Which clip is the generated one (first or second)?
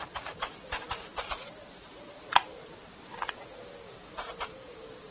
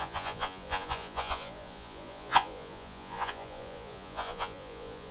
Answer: second